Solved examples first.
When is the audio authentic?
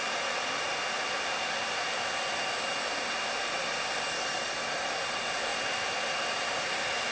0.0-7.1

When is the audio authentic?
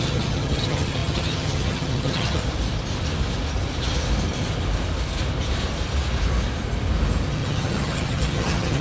2.4-7.3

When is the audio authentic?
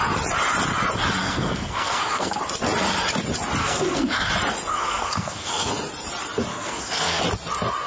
0.0-1.2; 2.4-3.6; 4.3-4.7; 5.7-6.5; 7.2-7.9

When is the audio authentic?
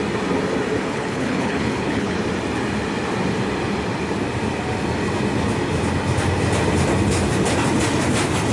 0.0-0.8; 2.2-8.5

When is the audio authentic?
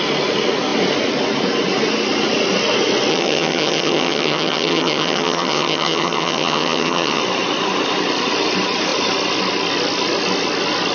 0.0-3.1; 7.2-10.9